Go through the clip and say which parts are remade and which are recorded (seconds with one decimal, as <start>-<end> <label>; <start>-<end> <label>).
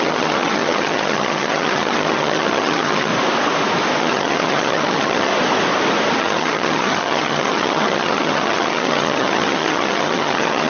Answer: 0.0-3.1 remade; 3.1-4.0 recorded; 4.0-5.3 remade; 5.3-6.2 recorded; 6.2-10.7 remade